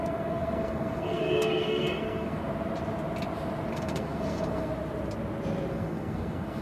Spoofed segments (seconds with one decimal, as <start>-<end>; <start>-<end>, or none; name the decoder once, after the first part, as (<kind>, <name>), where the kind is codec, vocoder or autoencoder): 0.0-2.4 (codec, SNAC); 3.7-4.7; 5.7-6.6